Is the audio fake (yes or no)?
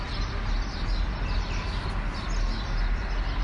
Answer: no